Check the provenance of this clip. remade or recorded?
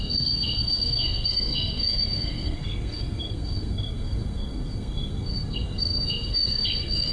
remade